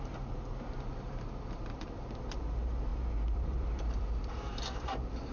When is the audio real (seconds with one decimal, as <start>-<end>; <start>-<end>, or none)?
none